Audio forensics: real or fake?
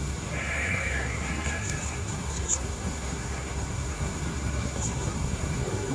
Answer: fake